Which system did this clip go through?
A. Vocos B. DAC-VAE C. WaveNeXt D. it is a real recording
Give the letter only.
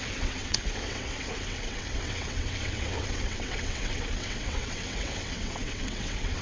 C